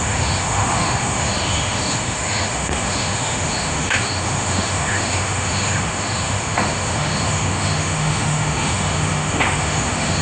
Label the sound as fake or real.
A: fake